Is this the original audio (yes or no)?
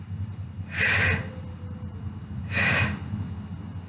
yes